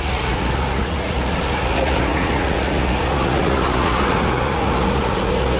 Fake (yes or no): yes